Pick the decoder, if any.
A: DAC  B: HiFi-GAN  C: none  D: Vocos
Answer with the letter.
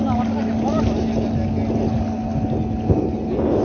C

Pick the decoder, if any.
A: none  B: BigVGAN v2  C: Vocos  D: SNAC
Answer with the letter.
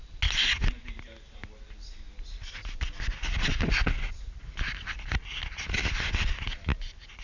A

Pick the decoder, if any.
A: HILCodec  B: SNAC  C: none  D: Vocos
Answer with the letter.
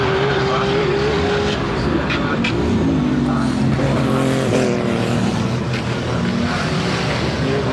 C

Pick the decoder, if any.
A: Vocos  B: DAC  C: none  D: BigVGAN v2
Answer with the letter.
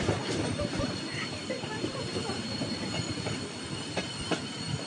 D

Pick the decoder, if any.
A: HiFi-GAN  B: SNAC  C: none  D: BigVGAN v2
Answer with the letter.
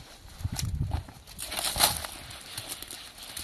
C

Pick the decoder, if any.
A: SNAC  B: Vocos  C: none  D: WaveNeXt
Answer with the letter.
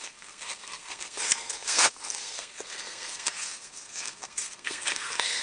A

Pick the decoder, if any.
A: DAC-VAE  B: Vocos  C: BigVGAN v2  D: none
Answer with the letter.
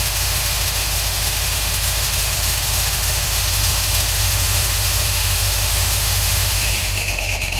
A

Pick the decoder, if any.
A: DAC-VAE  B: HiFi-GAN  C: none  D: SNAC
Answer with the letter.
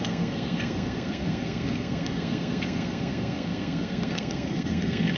D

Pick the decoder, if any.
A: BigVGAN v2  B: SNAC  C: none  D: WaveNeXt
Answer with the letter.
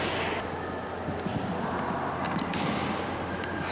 C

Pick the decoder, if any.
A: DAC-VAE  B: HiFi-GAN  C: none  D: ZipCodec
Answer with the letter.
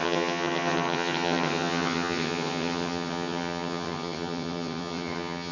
B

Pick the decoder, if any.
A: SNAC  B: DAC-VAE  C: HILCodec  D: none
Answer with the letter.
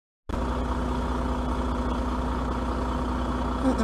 D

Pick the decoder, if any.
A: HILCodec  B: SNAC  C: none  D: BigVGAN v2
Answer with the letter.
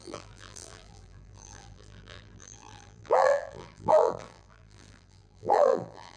D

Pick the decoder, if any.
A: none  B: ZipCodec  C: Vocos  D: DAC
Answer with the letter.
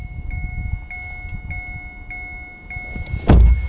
A